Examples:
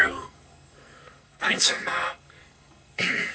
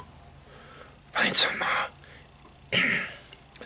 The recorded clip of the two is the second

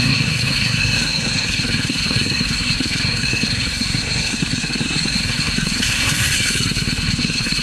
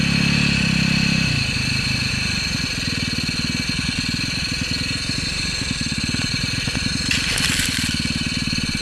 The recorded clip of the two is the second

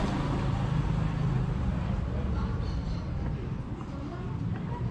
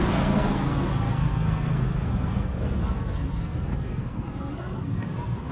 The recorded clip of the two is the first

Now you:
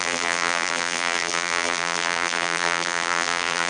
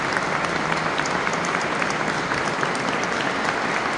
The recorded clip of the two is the second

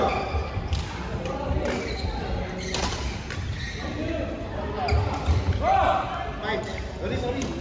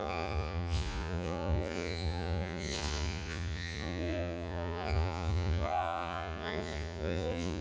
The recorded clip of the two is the first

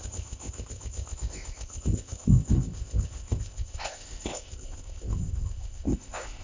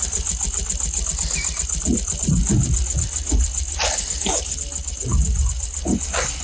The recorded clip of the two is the second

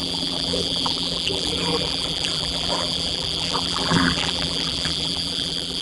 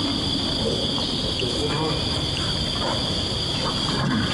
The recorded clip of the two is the second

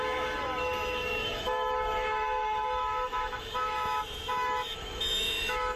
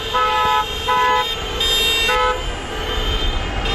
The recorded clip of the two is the second